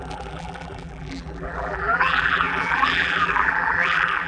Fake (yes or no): yes